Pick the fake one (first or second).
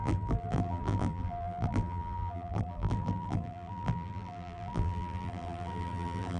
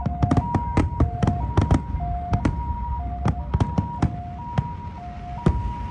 first